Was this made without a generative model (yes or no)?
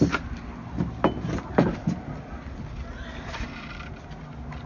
yes